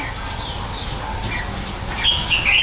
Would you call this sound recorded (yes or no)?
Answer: yes